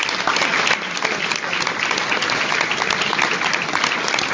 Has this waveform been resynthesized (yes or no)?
no